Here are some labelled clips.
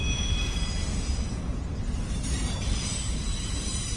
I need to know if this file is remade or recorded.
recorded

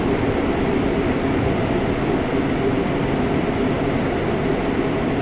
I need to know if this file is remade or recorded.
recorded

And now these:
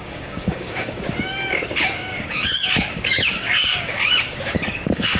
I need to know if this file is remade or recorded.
remade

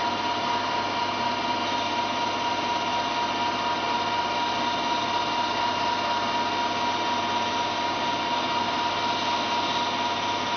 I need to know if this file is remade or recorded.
recorded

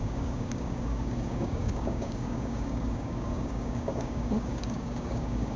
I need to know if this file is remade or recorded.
remade